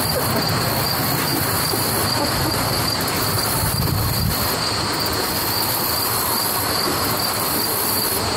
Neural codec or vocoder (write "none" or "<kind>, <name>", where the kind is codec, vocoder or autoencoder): none